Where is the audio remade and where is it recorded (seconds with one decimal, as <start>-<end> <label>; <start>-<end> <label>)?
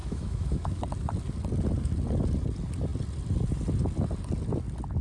0.0-0.8 remade; 0.8-5.0 recorded